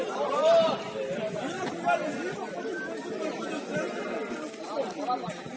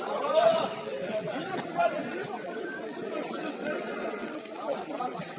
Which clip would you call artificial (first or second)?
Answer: second